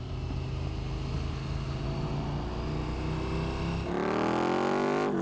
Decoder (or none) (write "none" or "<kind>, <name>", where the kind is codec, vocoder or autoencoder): none